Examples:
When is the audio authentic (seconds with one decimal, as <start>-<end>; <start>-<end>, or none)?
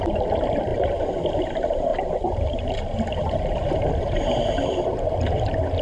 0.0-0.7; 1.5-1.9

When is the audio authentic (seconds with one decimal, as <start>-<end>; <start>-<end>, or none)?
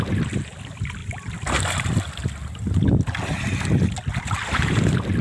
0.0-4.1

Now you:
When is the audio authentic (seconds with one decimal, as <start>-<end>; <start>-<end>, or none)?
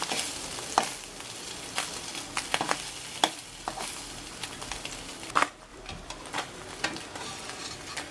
0.0-3.2; 3.9-5.7; 6.4-8.1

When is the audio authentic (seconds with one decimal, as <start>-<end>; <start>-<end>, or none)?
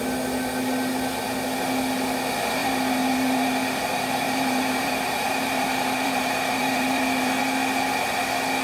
0.0-2.6; 7.4-8.6